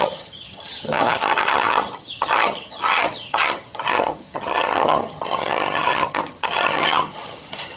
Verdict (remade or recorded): remade